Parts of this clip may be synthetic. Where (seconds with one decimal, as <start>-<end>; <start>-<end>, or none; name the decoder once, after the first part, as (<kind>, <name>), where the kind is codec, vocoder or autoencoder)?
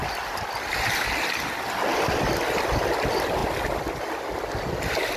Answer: none